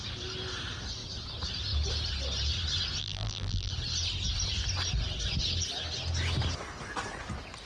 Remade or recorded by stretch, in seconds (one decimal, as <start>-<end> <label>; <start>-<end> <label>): 0.0-3.0 recorded; 3.0-3.7 remade; 3.7-7.7 recorded